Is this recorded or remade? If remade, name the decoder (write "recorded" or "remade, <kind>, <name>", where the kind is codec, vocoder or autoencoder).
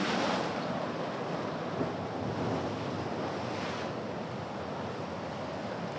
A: recorded